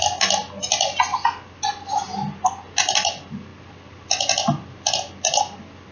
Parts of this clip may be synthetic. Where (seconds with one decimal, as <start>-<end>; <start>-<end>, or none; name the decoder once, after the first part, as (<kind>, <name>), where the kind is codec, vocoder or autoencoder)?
none